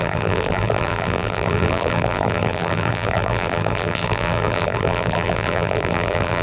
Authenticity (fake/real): fake